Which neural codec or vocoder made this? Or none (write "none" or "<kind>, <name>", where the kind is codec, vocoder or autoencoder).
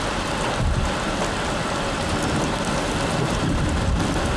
none